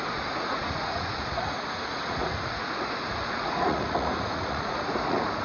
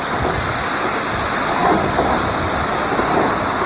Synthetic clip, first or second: first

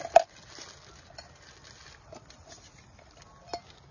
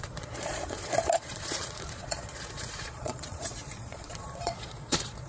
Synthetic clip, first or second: second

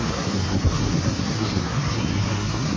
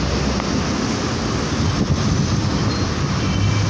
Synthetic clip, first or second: first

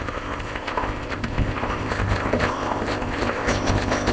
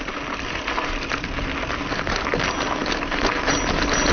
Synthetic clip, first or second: first